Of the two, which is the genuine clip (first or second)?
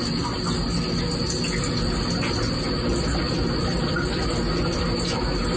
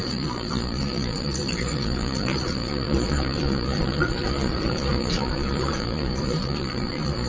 first